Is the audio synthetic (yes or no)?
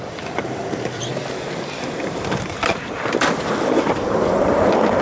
yes